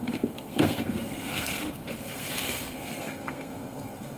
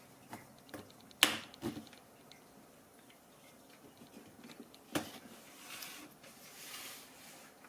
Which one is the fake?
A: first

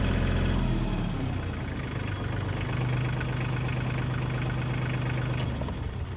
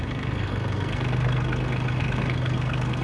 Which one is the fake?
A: second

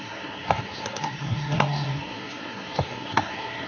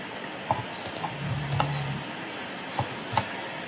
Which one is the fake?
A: first